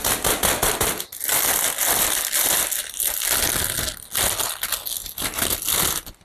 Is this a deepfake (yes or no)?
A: no